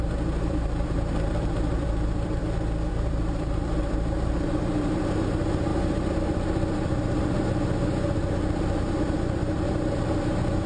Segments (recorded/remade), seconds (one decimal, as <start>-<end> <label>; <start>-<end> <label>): 0.0-2.4 remade; 2.4-2.9 recorded; 2.9-10.7 remade